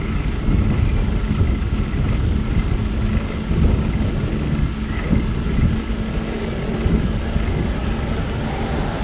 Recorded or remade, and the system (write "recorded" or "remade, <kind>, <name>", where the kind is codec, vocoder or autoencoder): recorded